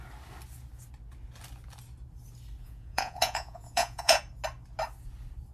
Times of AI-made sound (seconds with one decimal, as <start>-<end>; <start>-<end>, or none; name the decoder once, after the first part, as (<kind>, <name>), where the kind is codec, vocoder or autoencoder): 2.6-4.2 (vocoder, Vocos)